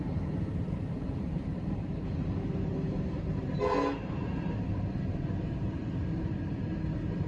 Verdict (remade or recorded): remade